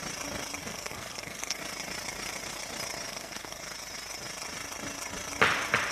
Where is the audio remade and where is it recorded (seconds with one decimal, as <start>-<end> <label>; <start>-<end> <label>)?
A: 0.0-0.6 recorded; 0.6-1.6 remade; 1.6-3.1 recorded; 3.1-3.6 remade; 3.6-5.9 recorded

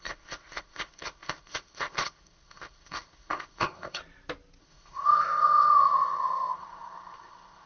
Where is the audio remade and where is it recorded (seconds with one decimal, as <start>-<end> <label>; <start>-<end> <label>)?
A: 0.0-4.0 remade; 4.0-4.6 recorded; 4.6-7.7 remade

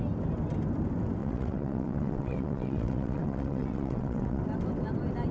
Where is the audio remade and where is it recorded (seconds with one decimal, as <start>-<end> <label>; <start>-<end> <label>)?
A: 0.0-1.2 recorded; 1.2-4.4 remade; 4.4-5.3 recorded

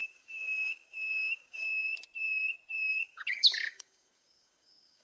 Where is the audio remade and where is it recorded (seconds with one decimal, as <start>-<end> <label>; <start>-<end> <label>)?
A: 0.0-1.7 remade; 1.7-2.9 recorded; 2.9-5.0 remade

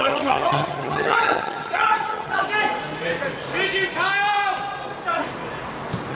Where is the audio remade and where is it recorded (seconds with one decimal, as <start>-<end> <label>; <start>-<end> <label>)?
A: 0.0-2.4 remade; 2.4-6.1 recorded

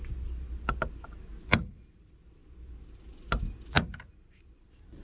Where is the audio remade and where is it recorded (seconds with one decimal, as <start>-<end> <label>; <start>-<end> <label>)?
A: 0.0-1.7 recorded; 1.7-2.4 remade; 2.4-4.3 recorded; 4.3-5.0 remade